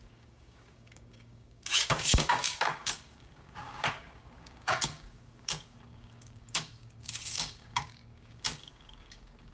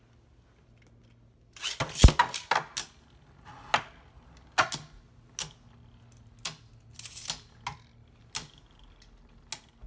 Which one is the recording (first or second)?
second